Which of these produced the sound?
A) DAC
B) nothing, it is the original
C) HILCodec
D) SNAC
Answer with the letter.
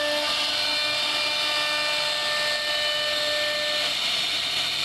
B